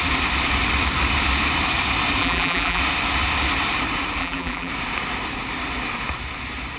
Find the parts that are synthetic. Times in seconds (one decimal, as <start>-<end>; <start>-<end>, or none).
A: 2.2-2.8; 4.2-4.7